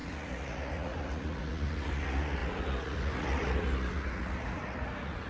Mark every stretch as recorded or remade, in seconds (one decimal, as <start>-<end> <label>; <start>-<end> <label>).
0.0-5.3 remade